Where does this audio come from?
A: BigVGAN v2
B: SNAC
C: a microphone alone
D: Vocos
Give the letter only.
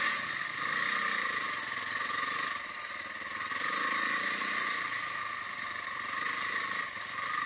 C